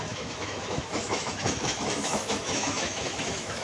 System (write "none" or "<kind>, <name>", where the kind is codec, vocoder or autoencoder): autoencoder, DAC-VAE